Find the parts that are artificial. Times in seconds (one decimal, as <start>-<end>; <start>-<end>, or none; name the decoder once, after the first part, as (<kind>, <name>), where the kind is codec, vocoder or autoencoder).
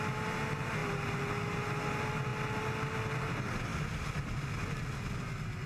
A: none